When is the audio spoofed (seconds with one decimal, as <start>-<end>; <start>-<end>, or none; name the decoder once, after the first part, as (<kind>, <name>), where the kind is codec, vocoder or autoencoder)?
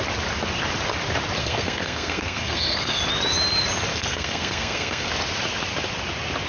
1.4-3.0 (codec, SNAC); 3.9-5.1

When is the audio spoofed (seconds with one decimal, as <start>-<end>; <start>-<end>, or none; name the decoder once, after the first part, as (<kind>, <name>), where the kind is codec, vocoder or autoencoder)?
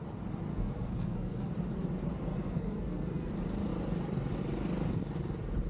0.5-1.5 (codec, SNAC); 2.1-3.3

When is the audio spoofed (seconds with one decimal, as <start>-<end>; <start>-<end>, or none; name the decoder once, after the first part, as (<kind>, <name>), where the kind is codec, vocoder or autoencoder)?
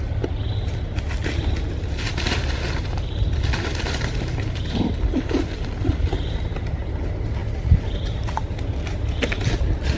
none